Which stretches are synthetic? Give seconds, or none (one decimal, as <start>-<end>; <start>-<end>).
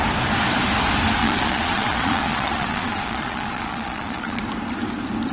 1.2-4.4